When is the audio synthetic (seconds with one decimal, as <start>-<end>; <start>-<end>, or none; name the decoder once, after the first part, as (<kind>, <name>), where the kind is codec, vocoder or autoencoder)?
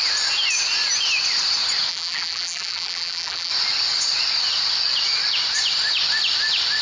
1.9-3.5 (vocoder, BigVGAN v2)